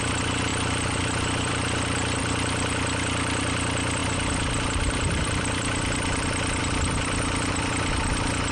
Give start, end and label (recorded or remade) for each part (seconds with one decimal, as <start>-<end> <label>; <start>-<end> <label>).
0.0-8.5 recorded